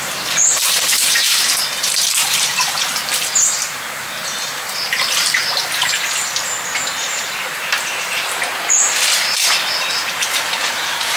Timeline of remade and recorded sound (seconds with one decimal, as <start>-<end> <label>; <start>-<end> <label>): 0.0-11.2 remade